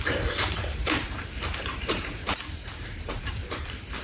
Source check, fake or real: fake